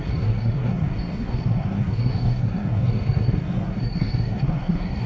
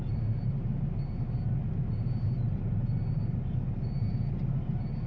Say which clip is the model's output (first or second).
first